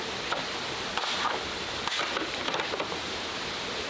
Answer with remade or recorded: recorded